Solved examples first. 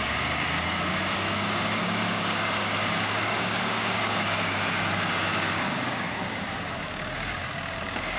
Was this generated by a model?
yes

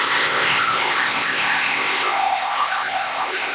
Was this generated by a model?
yes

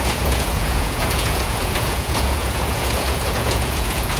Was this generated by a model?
yes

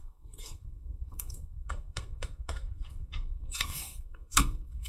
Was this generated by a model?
yes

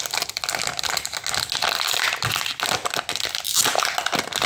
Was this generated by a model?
no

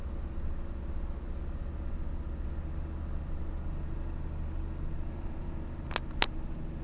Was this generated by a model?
no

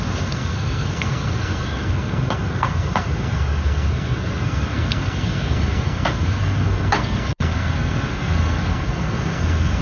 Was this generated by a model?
yes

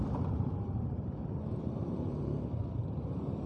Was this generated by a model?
yes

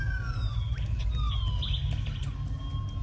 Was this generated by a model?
no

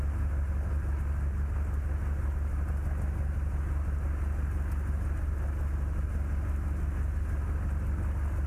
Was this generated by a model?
no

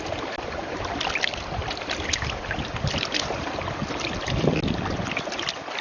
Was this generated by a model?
no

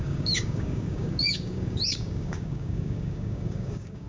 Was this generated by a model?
yes